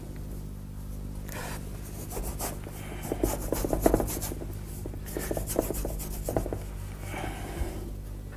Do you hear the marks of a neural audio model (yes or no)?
no